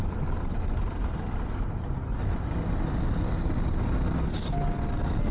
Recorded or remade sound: recorded